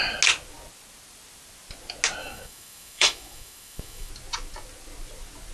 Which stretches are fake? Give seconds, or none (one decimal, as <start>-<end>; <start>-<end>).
2.2-4.1